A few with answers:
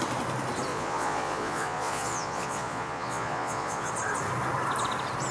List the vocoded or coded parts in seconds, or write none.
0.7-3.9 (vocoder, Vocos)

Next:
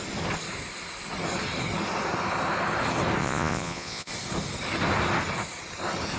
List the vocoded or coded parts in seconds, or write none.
3.2-4.1 (vocoder, Vocos)

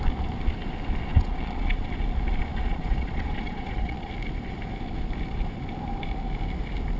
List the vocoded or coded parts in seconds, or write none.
1.1-2.0 (vocoder, Vocos); 2.5-4.1

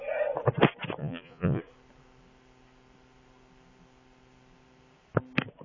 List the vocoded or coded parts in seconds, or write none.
1.0-1.6 (vocoder, Vocos)

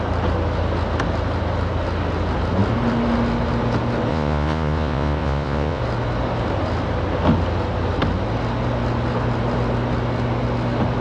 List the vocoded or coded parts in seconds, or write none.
4.1-5.8 (vocoder, Vocos)

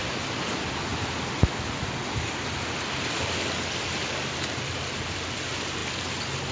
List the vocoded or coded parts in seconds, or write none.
none

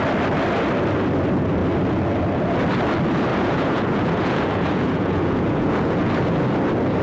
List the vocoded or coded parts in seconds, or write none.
3.3-6.2 (vocoder, Vocos)

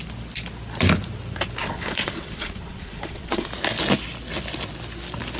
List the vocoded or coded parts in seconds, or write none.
1.6-3.5 (vocoder, Vocos)